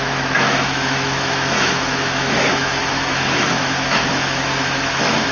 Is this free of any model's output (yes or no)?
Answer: no